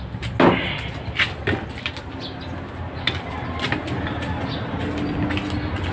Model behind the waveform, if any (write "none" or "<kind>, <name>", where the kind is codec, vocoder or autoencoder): none